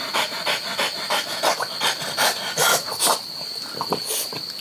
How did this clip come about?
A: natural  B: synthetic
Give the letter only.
A